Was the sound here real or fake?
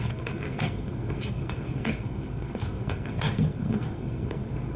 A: fake